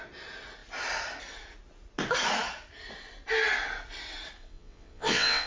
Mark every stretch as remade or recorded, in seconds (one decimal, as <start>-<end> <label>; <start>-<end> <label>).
0.0-4.4 recorded; 4.4-5.5 remade